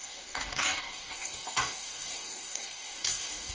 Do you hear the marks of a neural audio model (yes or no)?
yes